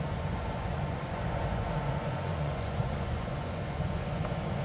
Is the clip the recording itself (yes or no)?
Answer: no